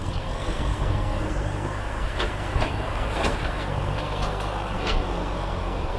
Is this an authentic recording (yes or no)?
no